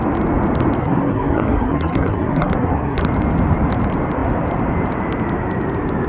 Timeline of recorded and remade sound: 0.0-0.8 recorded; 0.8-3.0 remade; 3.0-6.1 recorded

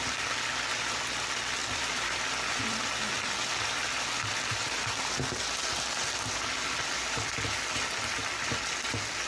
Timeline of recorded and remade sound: 0.0-1.6 recorded; 1.6-2.8 remade; 2.8-9.3 recorded

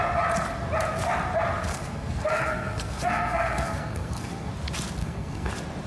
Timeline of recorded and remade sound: 0.0-1.7 recorded; 1.7-4.5 remade; 4.5-5.0 recorded; 5.0-5.5 remade; 5.5-5.9 recorded

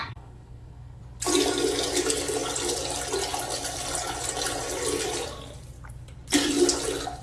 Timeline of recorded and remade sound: 0.0-1.0 remade; 1.0-7.2 recorded

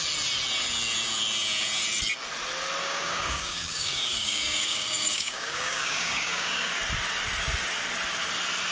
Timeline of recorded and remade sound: 0.0-2.8 recorded; 2.8-6.7 remade; 6.7-8.7 recorded